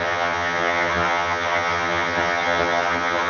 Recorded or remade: remade